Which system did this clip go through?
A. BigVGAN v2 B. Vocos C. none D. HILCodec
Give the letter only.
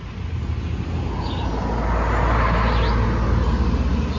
C